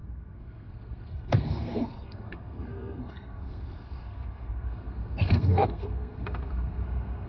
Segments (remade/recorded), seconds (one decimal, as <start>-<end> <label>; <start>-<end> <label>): 0.0-7.3 remade

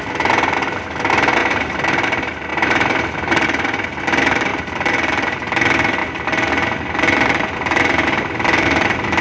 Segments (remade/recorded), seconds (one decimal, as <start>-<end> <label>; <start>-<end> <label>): 0.0-1.4 recorded; 1.4-2.0 remade; 2.0-4.5 recorded; 4.5-5.4 remade; 5.4-6.0 recorded; 6.0-6.5 remade; 6.5-9.2 recorded

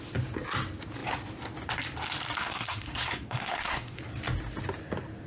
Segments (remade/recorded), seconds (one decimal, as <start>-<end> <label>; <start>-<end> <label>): 0.0-2.4 recorded; 2.4-4.0 remade; 4.0-5.3 recorded

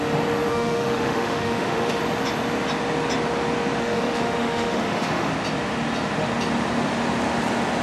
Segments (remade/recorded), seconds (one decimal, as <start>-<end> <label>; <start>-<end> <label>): 0.0-0.5 recorded; 0.5-2.0 remade; 2.0-3.8 recorded; 3.8-5.3 remade; 5.3-7.8 recorded

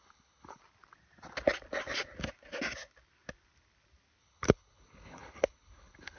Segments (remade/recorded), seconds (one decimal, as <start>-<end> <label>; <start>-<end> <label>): 0.0-0.6 remade; 0.6-4.2 recorded; 4.2-6.2 remade

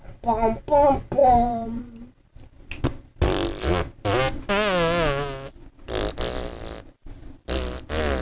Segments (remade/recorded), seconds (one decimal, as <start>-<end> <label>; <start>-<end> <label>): 0.0-1.2 recorded; 1.2-2.4 remade; 2.4-8.2 recorded

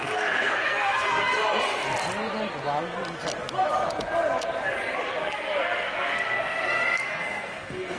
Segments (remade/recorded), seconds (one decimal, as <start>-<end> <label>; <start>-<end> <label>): 0.0-1.4 remade; 1.4-5.2 recorded; 5.2-8.0 remade

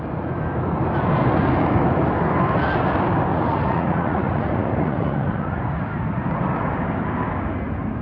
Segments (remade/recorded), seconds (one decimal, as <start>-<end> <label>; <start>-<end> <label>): 0.0-3.3 recorded; 3.3-5.6 remade; 5.6-8.0 recorded